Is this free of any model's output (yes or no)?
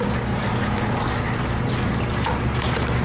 yes